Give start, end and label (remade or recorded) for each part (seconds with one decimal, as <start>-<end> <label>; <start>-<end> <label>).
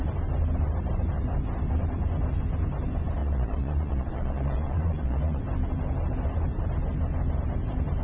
0.0-3.2 recorded; 3.2-5.4 remade; 5.4-8.0 recorded